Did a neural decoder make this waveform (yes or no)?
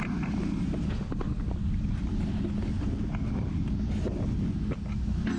no